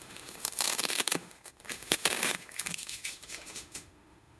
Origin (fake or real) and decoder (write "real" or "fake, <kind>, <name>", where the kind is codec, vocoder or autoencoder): fake, autoencoder, DAC-VAE